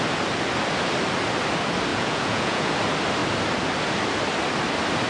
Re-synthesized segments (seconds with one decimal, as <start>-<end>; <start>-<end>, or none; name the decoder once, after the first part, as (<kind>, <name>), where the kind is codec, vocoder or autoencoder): 1.9-2.7 (vocoder, Vocos)